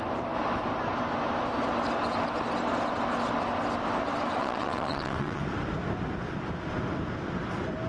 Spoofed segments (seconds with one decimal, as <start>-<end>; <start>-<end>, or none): 4.4-5.4

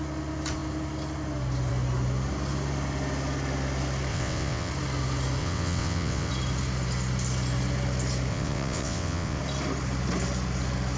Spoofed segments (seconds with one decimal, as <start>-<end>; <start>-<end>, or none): 4.1-4.7; 5.4-6.3; 8.3-9.4

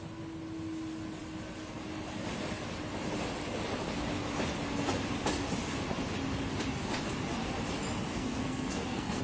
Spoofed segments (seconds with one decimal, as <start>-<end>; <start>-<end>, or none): 8.1-9.2

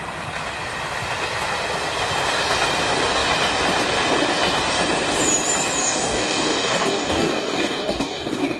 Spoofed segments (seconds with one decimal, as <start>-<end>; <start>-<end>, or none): 5.8-8.6

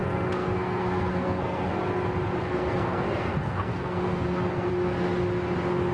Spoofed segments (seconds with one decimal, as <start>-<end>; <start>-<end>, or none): 0.0-1.7; 2.4-4.7

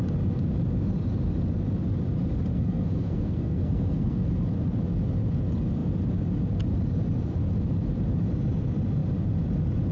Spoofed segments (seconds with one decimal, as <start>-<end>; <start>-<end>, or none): 2.5-4.3

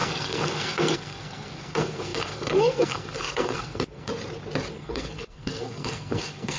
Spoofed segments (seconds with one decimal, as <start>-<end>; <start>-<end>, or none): 0.0-4.1; 4.7-6.6

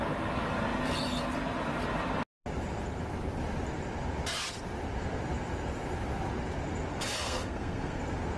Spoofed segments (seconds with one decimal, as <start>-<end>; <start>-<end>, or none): 6.9-8.0